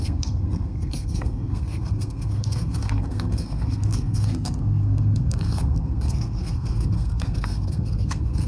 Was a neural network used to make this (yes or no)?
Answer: yes